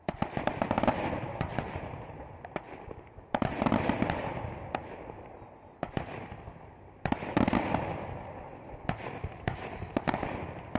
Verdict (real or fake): real